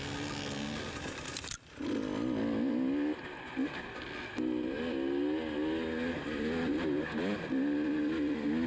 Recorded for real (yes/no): yes